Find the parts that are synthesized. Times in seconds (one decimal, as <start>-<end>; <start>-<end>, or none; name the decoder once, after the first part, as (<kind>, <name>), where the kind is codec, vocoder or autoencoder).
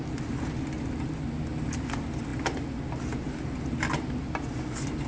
none